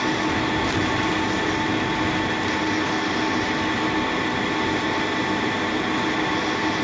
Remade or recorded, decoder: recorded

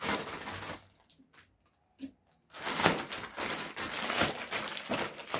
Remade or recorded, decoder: recorded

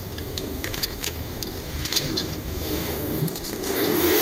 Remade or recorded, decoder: remade, codec, DAC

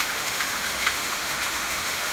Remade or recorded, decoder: remade, autoencoder, DAC-VAE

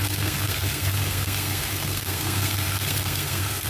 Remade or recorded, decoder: remade, codec, SNAC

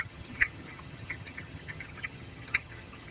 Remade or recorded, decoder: remade, vocoder, HiFi-GAN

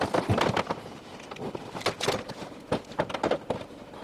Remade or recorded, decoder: recorded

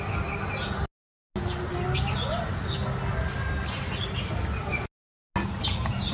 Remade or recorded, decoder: recorded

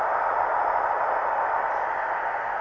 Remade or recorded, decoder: recorded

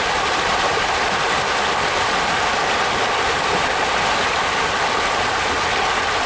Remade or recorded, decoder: recorded